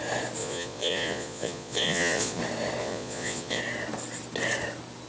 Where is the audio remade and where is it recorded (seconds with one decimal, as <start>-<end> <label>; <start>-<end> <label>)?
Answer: 0.0-0.4 recorded; 0.4-2.4 remade; 2.4-2.8 recorded; 2.8-3.6 remade; 3.6-5.1 recorded